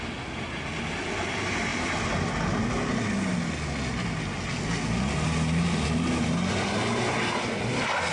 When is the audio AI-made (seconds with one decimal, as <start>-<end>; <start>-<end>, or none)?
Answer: none